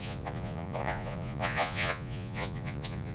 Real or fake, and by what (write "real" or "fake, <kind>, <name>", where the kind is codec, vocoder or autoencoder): fake, vocoder, Vocos